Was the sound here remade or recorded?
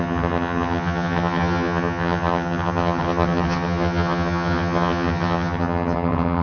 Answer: remade